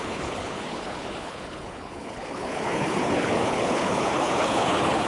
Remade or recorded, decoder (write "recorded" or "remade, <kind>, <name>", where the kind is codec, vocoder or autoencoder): remade, codec, HILCodec